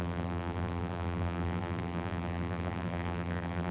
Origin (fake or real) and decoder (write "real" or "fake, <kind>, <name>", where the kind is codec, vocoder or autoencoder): fake, vocoder, BigVGAN v2